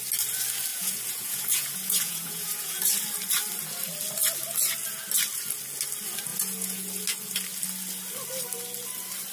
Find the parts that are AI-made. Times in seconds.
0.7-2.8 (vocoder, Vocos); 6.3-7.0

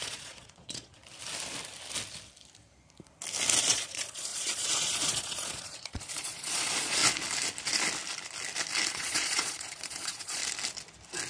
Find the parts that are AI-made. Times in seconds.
0.0-1.0 (vocoder, Vocos); 3.6-7.0; 8.9-10.4

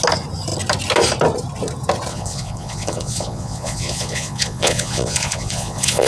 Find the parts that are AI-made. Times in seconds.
2.1-6.1 (vocoder, Vocos)

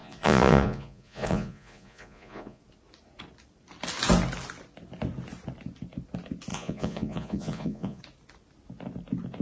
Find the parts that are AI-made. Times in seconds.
0.0-2.6 (vocoder, Vocos); 6.5-8.0

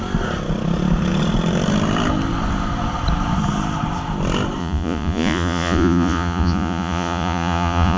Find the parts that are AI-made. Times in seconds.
4.6-8.0 (vocoder, Vocos)